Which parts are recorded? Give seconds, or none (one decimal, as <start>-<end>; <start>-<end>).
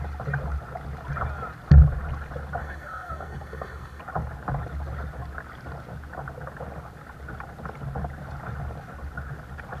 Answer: 0.0-2.6; 4.0-9.8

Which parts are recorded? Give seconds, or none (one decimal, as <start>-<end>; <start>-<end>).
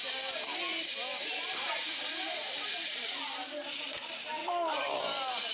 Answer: 0.0-0.7; 4.0-4.4; 5.0-5.5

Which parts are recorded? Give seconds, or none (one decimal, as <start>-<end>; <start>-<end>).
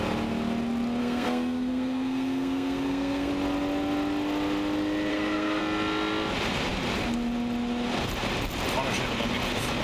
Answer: 0.0-1.0; 3.3-5.1; 5.6-9.8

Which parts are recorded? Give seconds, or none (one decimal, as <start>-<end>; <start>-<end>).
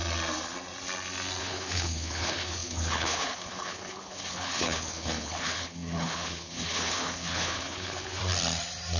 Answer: 0.0-1.4; 8.2-9.0